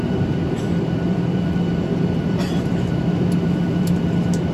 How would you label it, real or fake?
fake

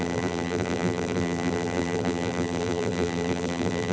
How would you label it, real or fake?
fake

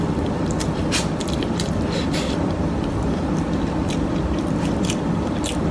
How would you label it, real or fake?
fake